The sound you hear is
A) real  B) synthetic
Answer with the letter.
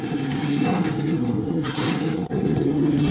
B